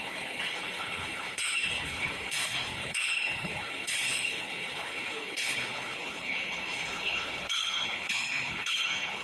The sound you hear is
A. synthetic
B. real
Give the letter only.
A